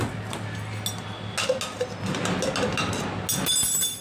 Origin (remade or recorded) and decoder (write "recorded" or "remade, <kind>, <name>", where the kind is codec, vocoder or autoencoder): recorded